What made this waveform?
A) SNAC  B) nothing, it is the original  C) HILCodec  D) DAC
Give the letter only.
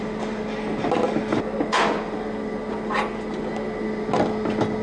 B